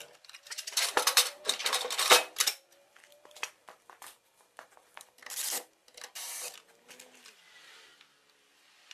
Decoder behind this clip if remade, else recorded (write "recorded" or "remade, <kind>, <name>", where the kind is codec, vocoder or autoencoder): remade, vocoder, BigVGAN v2